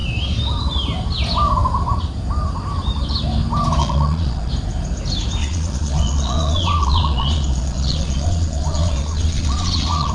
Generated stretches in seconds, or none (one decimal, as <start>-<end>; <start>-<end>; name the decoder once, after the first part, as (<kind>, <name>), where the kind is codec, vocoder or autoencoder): 3.8-4.5 (vocoder, Vocos); 5.4-10.1